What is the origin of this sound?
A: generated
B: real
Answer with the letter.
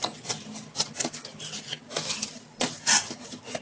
B